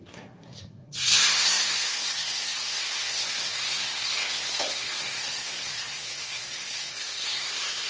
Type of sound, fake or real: fake